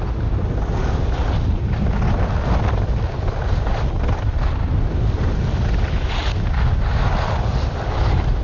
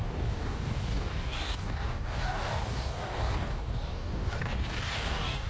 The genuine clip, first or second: first